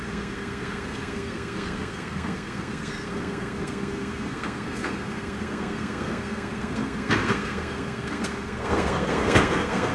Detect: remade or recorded remade